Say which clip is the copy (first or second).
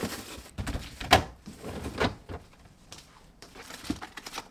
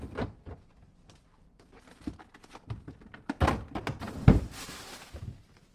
first